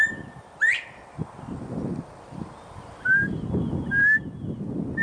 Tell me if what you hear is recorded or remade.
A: recorded